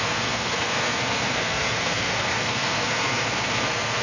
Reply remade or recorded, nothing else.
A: remade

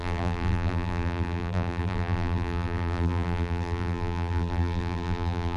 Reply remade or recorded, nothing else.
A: remade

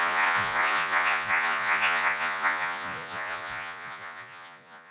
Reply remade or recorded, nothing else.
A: remade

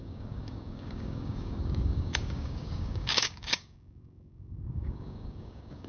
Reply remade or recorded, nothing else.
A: remade